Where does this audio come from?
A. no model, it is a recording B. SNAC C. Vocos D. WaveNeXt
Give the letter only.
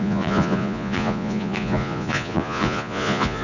C